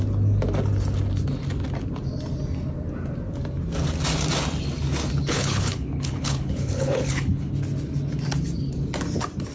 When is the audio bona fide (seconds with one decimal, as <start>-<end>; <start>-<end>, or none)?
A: 0.0-5.2; 7.5-9.5

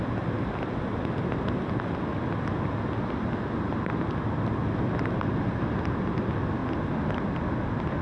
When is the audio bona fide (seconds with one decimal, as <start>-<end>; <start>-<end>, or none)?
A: 0.0-8.0

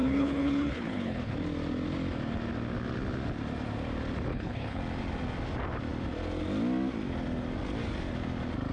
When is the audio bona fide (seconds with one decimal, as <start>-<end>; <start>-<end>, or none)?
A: 1.3-4.3; 4.8-8.7

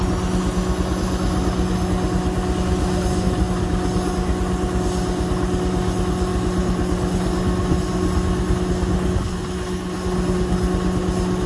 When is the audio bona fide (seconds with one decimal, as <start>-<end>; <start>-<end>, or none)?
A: 0.0-11.5

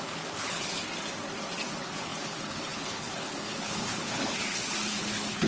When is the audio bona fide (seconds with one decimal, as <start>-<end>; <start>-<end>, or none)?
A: 0.8-1.7

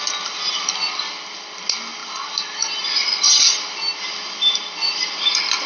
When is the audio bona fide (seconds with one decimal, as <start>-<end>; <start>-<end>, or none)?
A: 0.0-5.7

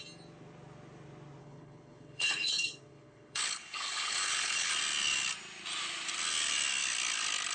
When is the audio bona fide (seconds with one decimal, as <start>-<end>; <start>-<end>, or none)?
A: 0.0-1.4; 4.7-7.5